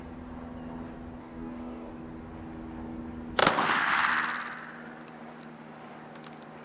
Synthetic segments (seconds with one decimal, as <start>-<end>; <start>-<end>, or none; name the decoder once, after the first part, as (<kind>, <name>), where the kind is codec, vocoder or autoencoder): 1.2-1.9 (codec, DAC)